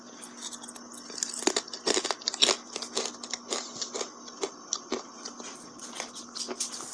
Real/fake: real